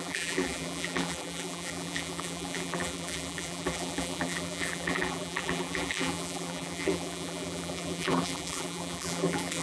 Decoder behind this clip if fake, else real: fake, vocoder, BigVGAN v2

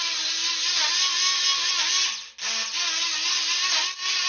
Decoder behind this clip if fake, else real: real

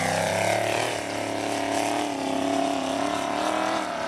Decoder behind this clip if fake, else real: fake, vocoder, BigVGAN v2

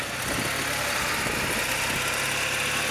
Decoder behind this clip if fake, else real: real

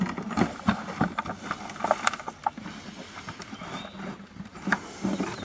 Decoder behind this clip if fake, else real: real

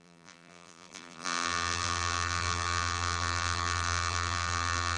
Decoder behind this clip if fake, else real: fake, vocoder, BigVGAN v2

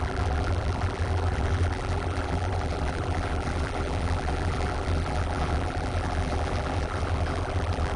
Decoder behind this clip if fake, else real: fake, vocoder, BigVGAN v2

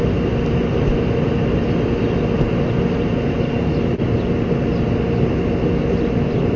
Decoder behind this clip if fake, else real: real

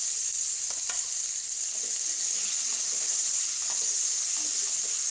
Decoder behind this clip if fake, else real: fake, vocoder, BigVGAN v2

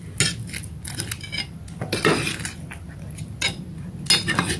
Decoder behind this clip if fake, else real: real